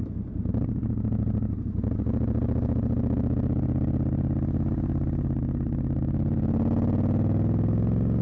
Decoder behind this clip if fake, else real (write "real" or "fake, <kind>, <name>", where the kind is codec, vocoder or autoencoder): real